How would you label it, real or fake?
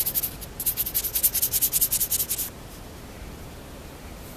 real